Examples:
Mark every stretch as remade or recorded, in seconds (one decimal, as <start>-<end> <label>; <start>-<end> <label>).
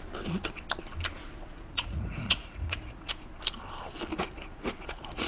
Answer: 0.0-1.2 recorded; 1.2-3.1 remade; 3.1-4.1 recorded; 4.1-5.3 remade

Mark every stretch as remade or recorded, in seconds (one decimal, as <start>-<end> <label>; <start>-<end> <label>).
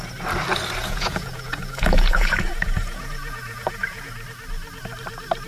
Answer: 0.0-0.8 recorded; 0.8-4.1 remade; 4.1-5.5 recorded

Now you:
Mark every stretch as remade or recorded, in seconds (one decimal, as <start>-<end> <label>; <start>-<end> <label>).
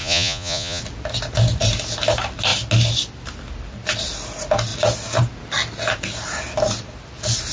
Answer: 0.0-0.8 remade; 0.8-7.5 recorded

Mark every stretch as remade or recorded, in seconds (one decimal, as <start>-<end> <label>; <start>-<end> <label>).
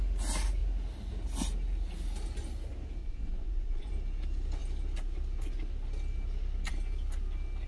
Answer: 0.0-3.0 recorded; 3.0-3.9 remade; 3.9-7.7 recorded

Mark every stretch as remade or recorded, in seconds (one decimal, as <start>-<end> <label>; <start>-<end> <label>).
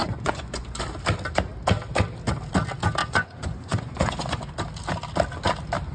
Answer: 0.0-0.8 remade; 0.8-3.0 recorded; 3.0-4.5 remade; 4.5-5.9 recorded